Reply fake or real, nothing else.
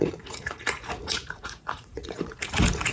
fake